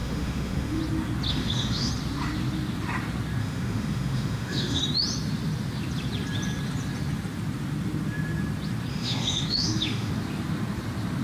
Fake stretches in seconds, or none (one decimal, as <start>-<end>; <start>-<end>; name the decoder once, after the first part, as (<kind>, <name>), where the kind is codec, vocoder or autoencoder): 0.0-0.8 (autoencoder, DAC-VAE); 1.3-1.9; 3.4-4.8; 8.9-10.1